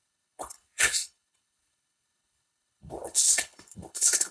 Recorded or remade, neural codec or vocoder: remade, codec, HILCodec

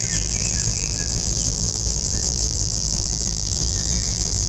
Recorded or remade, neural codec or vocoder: remade, vocoder, BigVGAN v2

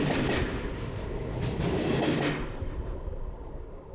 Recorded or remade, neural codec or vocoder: recorded